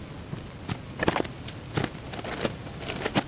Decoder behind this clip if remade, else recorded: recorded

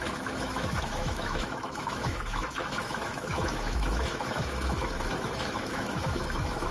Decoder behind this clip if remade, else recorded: remade, autoencoder, DAC-VAE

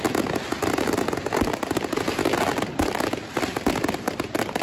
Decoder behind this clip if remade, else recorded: recorded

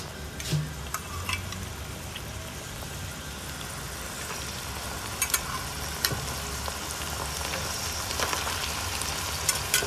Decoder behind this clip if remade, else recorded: recorded